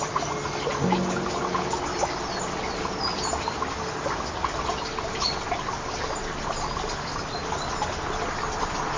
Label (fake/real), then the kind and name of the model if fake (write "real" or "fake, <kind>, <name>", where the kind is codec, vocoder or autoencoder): real